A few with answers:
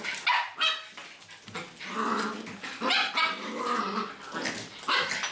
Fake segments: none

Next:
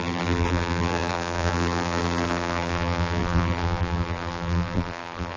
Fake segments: 0.0-5.4 (vocoder, BigVGAN v2)

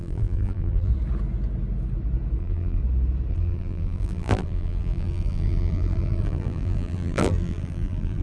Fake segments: 0.0-0.9 (vocoder, BigVGAN v2); 2.4-2.8; 3.3-8.2

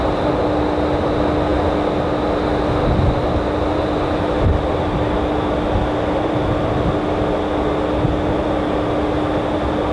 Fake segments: none

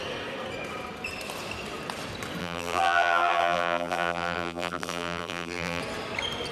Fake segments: 2.4-5.8 (vocoder, BigVGAN v2)

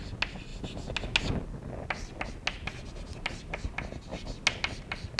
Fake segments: none

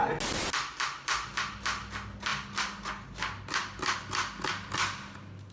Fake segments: none

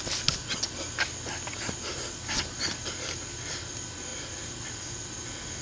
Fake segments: none